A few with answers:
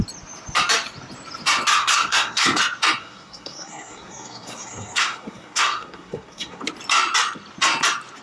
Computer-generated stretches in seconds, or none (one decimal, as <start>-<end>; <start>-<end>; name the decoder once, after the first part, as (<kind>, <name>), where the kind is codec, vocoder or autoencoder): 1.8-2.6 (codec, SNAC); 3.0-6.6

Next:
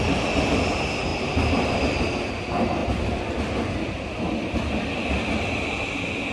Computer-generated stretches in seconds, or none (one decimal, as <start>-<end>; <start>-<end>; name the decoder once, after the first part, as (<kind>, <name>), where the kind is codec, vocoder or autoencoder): none

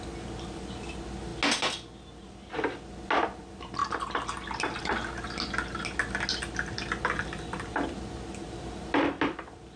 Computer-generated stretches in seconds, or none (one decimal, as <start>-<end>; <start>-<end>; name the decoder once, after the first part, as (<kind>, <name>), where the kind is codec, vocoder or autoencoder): none